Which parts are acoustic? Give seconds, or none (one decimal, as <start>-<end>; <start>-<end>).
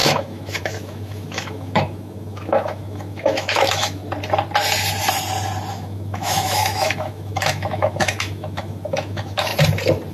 4.0-5.7; 9.5-10.1